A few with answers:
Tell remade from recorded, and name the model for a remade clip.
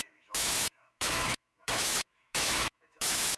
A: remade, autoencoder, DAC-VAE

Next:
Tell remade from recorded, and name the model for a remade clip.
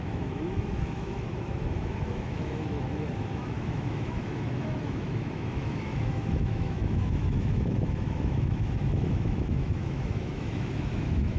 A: remade, autoencoder, DAC-VAE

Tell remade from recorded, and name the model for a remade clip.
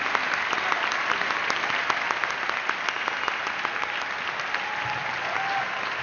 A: recorded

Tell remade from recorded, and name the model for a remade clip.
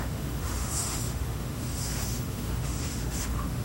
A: remade, autoencoder, DAC-VAE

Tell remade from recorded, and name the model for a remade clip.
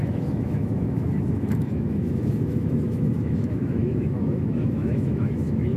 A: remade, autoencoder, DAC-VAE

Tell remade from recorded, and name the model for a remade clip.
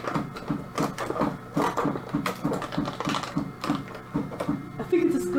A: recorded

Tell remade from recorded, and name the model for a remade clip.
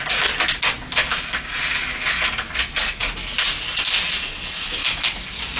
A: recorded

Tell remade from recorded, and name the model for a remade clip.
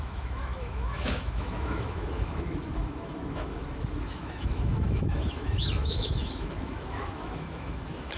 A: remade, autoencoder, DAC-VAE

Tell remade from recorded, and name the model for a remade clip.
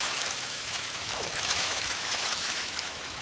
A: remade, autoencoder, DAC-VAE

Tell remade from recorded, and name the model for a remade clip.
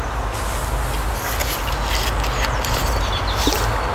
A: recorded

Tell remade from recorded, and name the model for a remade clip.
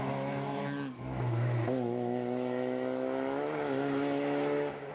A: remade, autoencoder, DAC-VAE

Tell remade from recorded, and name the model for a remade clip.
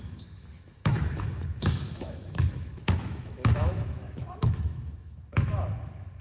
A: remade, autoencoder, DAC-VAE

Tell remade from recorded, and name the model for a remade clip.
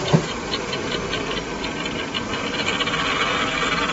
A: recorded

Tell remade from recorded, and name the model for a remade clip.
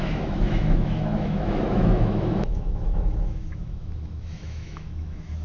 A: remade, autoencoder, DAC-VAE